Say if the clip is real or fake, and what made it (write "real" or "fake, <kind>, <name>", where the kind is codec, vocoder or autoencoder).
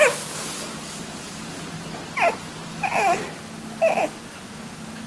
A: real